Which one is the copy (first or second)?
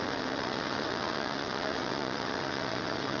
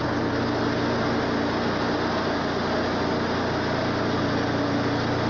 first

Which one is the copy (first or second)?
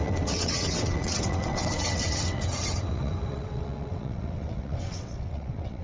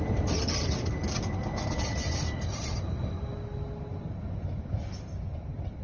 first